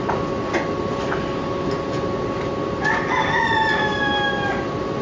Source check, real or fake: real